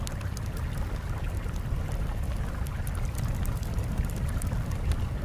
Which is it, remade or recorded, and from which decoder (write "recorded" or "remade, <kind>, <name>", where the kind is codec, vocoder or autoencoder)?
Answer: recorded